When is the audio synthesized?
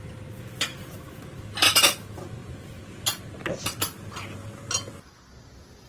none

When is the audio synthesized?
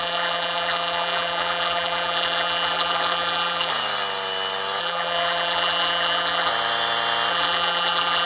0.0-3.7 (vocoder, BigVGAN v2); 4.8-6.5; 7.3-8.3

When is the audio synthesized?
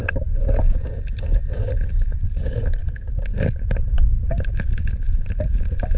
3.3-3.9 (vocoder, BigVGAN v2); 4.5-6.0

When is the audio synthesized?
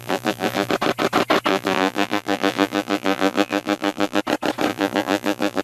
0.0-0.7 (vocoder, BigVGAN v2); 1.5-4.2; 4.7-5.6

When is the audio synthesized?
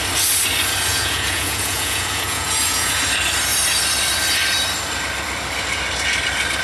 0.9-3.0 (vocoder, Vocos)